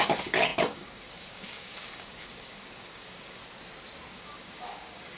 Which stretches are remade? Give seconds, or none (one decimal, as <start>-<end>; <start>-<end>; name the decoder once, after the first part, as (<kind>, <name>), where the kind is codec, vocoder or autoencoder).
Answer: 0.0-3.4 (codec, DAC); 4.1-5.2